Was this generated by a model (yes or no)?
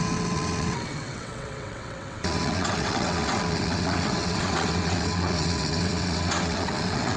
yes